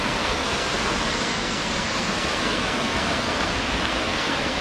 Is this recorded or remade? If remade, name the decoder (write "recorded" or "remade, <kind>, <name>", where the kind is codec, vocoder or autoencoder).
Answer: remade, codec, SNAC